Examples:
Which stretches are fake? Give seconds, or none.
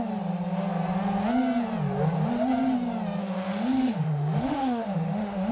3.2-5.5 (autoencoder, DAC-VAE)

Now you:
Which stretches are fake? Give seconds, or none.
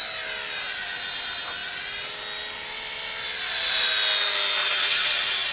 4.6-5.5 (vocoder, WaveNeXt)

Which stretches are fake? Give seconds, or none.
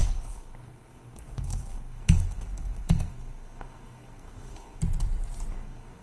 0.0-4.8 (codec, SNAC); 5.5-6.0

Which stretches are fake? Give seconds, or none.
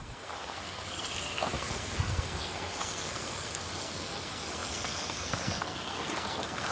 0.0-6.7 (codec, SNAC)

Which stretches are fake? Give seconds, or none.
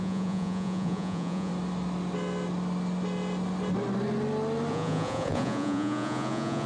0.0-1.5 (vocoder, Vocos); 4.7-6.7